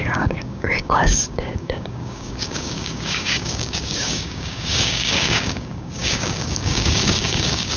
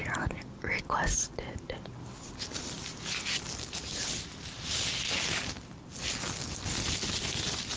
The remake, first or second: first